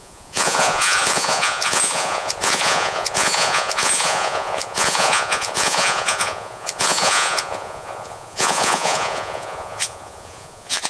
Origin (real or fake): fake